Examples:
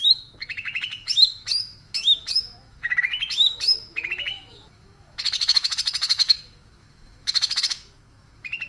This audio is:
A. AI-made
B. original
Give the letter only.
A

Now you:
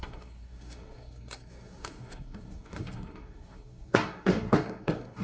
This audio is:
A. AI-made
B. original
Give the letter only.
A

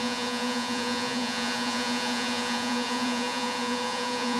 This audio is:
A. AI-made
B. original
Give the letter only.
A